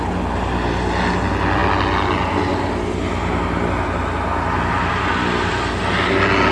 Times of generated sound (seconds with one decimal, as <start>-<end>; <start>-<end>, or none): none